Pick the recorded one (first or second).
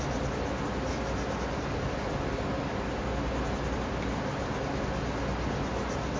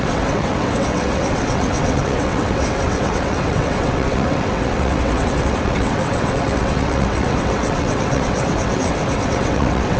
first